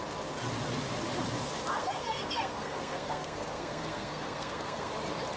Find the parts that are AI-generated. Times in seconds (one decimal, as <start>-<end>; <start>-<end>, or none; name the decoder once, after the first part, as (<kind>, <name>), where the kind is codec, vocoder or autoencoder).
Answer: 1.7-4.9 (codec, SNAC)